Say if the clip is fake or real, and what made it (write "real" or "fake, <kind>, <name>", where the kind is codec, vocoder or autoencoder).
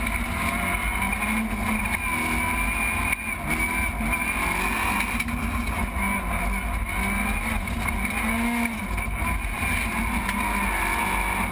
real